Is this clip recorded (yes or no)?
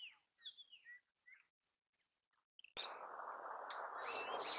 yes